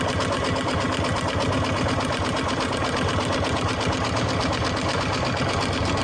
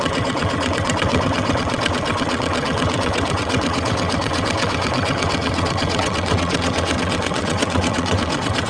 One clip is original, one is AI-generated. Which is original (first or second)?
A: first